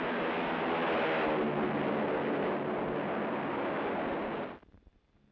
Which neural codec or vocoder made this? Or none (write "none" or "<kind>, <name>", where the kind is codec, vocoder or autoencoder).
none